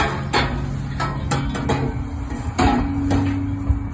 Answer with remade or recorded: recorded